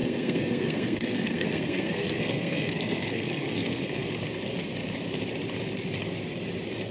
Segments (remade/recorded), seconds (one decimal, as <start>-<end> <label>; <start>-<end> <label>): 0.0-4.1 remade; 4.1-6.9 recorded